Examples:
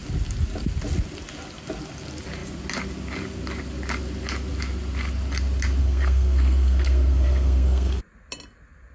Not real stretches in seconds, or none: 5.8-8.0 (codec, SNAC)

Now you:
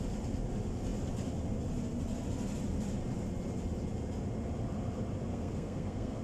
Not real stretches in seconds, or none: 5.3-6.2 (codec, SNAC)

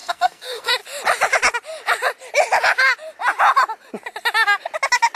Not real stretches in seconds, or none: 0.0-0.7 (codec, SNAC)

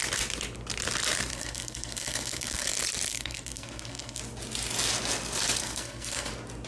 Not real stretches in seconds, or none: 1.3-2.7 (codec, SNAC); 3.1-4.2; 5.6-6.3

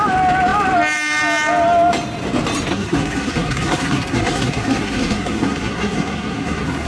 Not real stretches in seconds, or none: 2.7-6.9 (codec, SNAC)